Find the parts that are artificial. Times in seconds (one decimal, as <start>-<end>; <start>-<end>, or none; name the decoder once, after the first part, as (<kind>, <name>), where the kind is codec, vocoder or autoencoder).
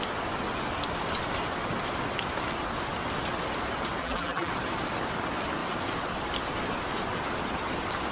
4.0-4.5 (vocoder, BigVGAN v2)